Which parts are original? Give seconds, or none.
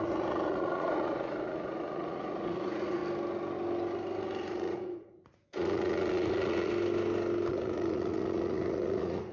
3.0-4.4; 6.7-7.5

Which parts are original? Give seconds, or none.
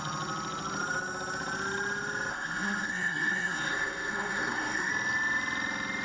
0.0-2.3; 4.9-6.0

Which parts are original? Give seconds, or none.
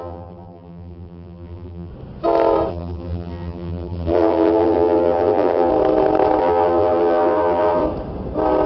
1.9-2.7; 5.7-6.4; 7.8-8.7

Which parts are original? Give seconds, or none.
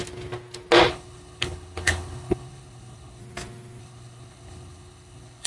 0.0-0.9; 3.2-3.8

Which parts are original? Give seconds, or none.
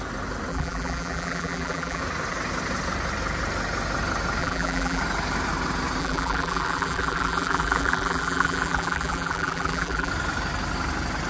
0.0-0.5; 2.0-4.4; 5.0-6.0; 10.1-11.3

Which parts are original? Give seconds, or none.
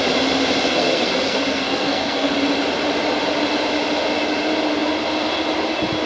0.0-0.7; 2.3-6.1